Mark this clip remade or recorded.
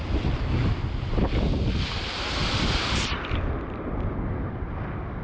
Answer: recorded